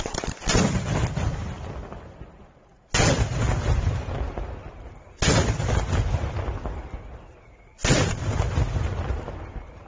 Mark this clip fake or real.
real